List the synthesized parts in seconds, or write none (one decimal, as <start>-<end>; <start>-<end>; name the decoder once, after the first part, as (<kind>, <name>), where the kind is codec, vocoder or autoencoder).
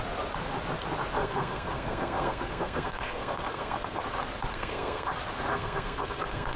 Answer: 1.2-4.0 (codec, SNAC); 4.5-5.1; 5.5-6.6